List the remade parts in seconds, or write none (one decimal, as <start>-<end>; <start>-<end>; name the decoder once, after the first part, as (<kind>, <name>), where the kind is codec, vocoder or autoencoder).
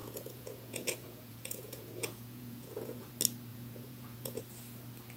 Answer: 0.0-3.1 (vocoder, Vocos); 3.5-4.4